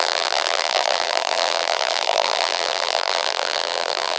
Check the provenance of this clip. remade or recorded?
remade